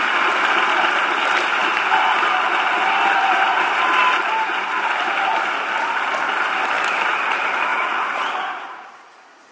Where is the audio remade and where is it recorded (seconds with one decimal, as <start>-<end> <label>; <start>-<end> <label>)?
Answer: 0.0-7.7 recorded; 7.7-9.5 remade